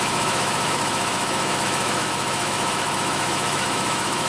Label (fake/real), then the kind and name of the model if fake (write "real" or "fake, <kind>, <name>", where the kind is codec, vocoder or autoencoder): fake, autoencoder, DAC-VAE